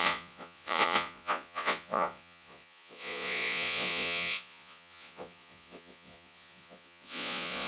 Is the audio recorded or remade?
remade